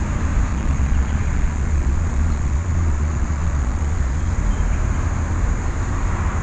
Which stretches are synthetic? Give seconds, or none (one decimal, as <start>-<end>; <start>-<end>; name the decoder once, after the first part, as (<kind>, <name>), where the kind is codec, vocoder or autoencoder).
0.5-4.3 (vocoder, Vocos)